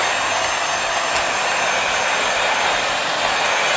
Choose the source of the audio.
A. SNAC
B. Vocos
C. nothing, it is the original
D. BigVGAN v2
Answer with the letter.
C